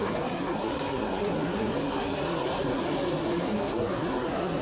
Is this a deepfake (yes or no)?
yes